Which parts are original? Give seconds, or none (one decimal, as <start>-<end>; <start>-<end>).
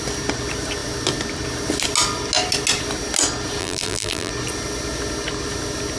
0.0-3.6; 4.3-6.0